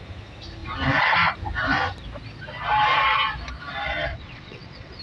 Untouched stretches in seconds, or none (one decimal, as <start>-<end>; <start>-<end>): 0.0-4.1